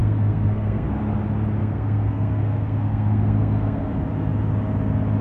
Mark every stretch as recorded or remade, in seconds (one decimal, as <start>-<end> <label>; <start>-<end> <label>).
0.0-0.9 remade; 0.9-1.6 recorded; 1.6-3.9 remade; 3.9-5.2 recorded